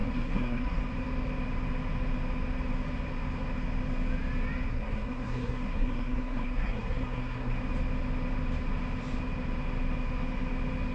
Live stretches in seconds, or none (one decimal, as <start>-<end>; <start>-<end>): 0.8-4.7; 7.6-10.9